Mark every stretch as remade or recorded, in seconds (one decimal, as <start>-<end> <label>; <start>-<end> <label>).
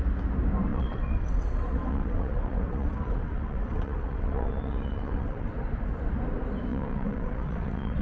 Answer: 0.0-0.7 recorded; 0.7-5.5 remade; 5.5-6.7 recorded; 6.7-8.0 remade